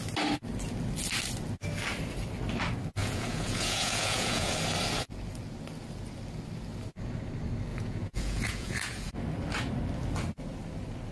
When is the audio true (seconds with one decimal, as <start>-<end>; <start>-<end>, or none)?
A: 0.0-3.0; 4.5-7.7; 9.1-11.1